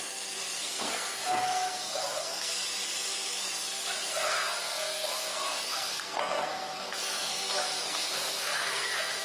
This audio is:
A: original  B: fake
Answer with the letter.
B